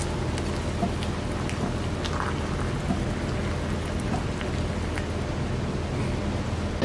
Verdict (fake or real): real